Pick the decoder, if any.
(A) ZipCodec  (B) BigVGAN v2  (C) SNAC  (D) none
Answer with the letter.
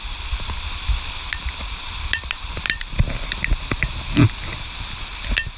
D